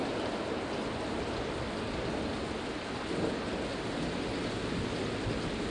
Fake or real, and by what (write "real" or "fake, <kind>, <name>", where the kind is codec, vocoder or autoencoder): real